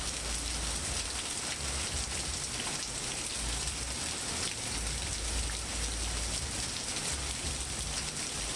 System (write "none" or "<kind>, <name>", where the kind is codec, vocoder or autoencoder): none